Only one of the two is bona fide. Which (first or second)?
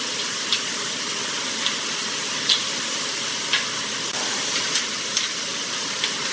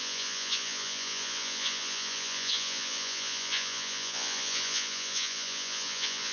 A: first